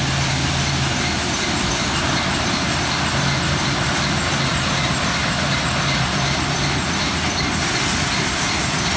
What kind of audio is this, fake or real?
real